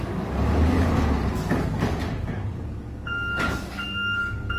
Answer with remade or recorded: remade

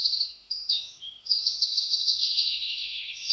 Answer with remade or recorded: remade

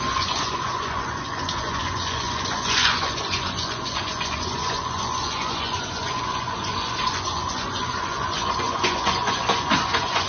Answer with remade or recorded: remade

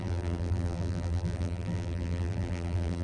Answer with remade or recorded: remade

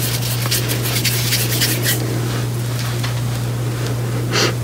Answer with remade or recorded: recorded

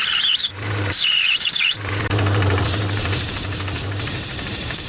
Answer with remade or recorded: remade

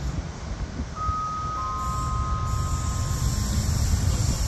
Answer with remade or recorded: recorded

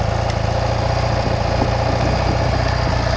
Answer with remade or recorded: recorded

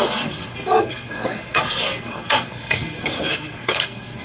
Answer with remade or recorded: remade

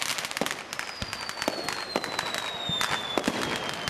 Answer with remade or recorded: recorded